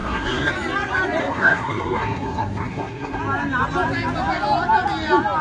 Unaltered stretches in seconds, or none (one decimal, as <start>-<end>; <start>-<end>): 0.5-1.2; 3.2-5.4